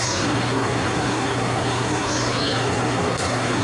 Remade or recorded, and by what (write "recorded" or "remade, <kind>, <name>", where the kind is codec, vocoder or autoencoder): remade, codec, SNAC